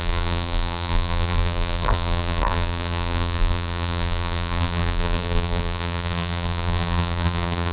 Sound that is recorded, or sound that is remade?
remade